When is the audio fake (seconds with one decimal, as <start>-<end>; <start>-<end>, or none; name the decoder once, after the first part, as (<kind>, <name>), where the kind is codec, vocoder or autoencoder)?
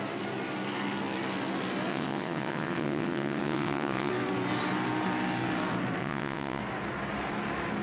1.9-4.1 (vocoder, WaveNeXt); 6.0-6.6